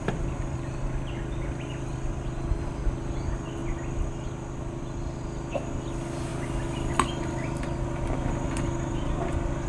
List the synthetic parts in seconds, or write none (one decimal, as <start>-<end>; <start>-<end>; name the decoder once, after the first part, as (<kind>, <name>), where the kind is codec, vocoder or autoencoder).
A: none